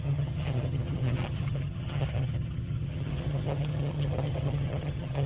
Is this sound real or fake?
fake